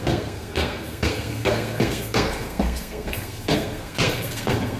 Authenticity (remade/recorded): remade